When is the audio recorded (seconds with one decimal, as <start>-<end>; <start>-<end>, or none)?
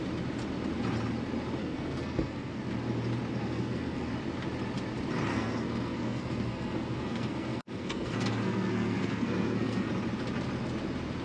0.0-1.6; 2.6-3.4; 4.1-5.3; 9.9-11.2